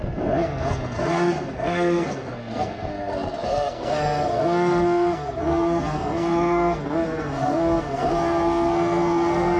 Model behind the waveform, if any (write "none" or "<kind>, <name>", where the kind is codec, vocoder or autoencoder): codec, SNAC